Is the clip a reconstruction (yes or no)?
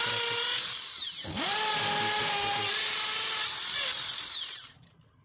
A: no